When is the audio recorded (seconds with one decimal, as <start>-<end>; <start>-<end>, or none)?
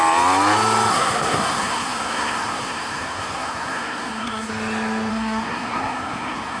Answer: 0.0-0.9; 4.5-5.1